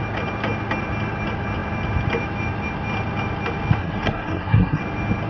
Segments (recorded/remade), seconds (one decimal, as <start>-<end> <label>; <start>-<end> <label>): 0.0-3.8 recorded; 3.8-4.8 remade; 4.8-5.3 recorded